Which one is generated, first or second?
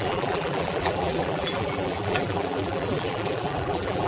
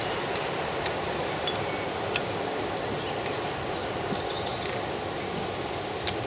first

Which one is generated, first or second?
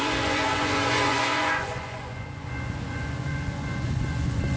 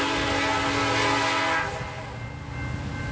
first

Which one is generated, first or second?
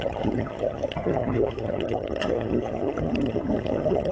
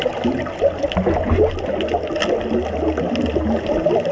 first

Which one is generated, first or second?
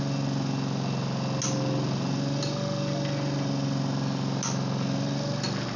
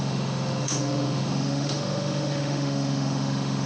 second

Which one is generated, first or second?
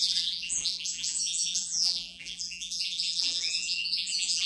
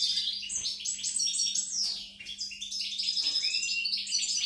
first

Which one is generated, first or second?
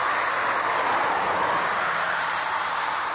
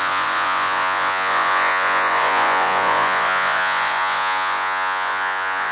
second